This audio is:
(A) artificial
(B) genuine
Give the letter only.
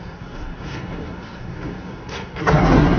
A